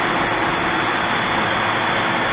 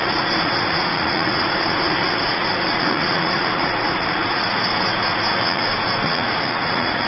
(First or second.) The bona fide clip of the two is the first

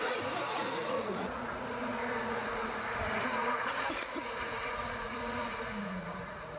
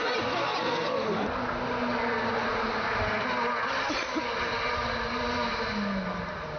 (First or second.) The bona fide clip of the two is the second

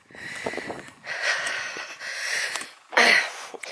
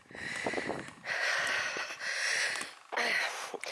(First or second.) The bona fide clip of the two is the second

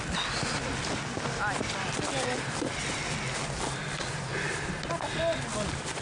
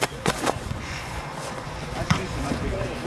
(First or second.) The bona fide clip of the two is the first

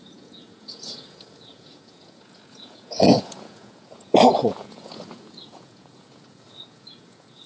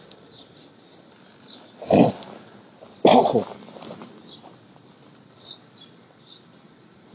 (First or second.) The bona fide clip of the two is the second